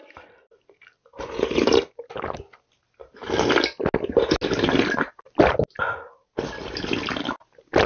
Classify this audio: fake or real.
real